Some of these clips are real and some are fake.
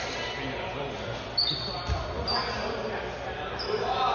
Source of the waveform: real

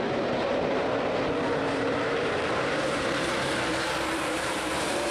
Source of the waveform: fake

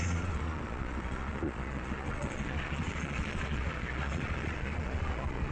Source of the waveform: fake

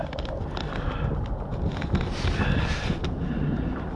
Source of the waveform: real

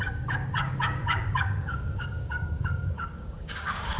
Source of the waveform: fake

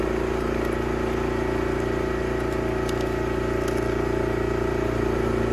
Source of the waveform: real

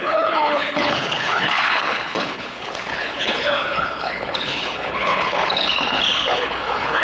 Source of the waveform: fake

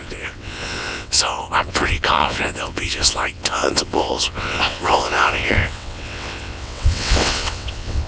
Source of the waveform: fake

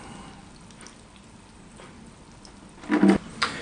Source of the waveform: real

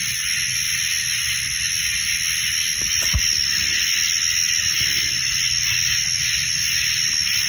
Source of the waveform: real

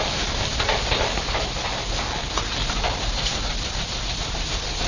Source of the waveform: real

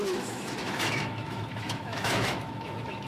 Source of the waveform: fake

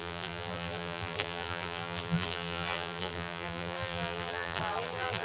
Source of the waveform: fake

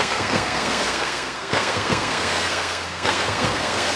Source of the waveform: fake